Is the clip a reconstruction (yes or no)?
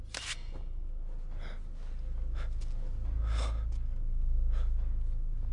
no